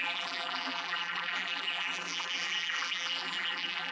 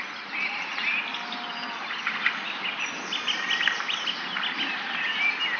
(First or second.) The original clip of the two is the second